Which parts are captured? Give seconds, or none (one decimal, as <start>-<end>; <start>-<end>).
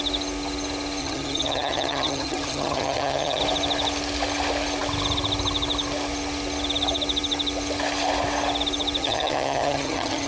0.0-1.0; 3.4-9.0